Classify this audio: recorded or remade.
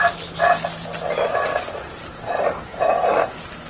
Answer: recorded